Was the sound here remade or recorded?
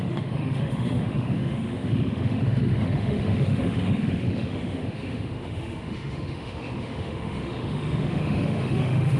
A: remade